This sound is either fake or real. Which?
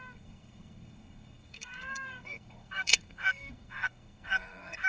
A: fake